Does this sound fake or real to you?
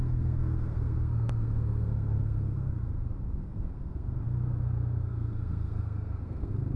fake